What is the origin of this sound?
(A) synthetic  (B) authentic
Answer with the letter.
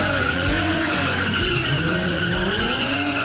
A